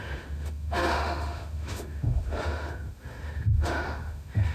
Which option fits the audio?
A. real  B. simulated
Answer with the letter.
B